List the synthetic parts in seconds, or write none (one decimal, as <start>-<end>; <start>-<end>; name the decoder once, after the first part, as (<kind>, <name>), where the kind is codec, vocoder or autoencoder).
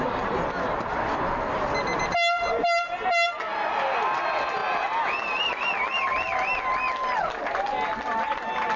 none